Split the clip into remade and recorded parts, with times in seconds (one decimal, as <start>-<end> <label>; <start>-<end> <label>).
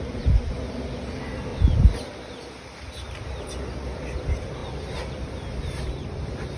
0.0-1.5 recorded; 1.5-2.1 remade; 2.1-6.6 recorded